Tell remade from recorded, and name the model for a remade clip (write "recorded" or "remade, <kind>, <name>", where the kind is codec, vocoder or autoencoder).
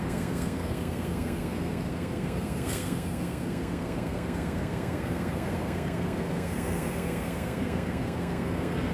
remade, codec, SNAC